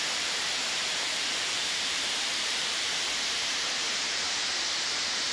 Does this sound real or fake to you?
fake